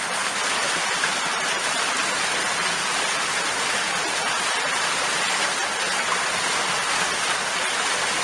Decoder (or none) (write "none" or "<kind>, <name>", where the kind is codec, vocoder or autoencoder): none